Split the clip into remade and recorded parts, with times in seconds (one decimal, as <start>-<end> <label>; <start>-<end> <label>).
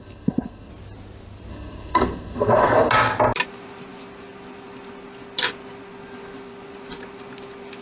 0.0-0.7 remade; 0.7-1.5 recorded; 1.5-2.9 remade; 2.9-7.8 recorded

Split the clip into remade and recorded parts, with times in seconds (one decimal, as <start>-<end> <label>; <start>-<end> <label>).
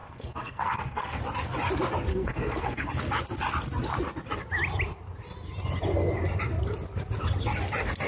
0.0-1.2 remade; 1.2-2.1 recorded; 2.1-2.9 remade; 2.9-8.1 recorded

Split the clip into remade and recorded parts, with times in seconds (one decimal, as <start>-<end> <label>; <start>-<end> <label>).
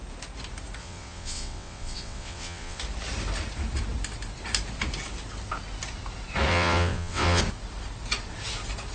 0.0-0.8 recorded; 0.8-2.8 remade; 2.8-6.5 recorded; 6.5-7.4 remade; 7.4-8.9 recorded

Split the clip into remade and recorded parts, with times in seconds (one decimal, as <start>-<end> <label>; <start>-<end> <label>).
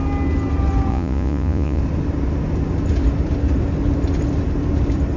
0.0-0.9 recorded; 0.9-1.8 remade; 1.8-5.2 recorded